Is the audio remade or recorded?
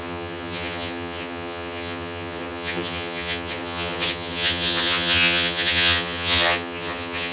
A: remade